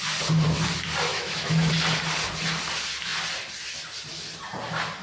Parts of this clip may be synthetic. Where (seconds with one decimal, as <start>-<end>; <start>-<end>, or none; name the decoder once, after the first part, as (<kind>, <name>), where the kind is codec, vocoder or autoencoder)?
1.1-1.7 (autoencoder, DAC-VAE)